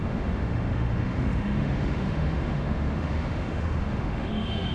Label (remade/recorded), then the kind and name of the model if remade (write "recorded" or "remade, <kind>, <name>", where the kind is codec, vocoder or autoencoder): remade, autoencoder, DAC-VAE